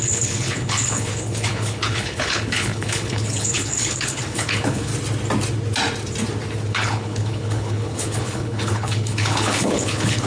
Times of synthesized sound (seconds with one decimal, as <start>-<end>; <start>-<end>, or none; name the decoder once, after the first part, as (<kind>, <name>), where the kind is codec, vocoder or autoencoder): 0.0-4.9 (codec, HILCodec); 6.7-10.3